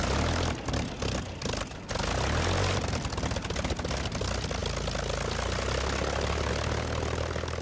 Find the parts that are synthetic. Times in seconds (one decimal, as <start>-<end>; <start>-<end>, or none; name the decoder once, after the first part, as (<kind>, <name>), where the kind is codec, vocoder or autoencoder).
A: none